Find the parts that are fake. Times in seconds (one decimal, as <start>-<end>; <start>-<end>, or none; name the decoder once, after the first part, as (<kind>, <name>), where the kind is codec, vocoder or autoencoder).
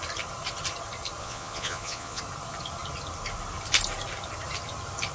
1.2-2.2 (vocoder, Vocos)